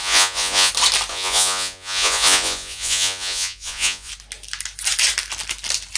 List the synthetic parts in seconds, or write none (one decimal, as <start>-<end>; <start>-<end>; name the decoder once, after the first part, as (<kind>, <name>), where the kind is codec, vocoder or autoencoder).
0.0-0.7 (vocoder, Vocos); 1.1-4.1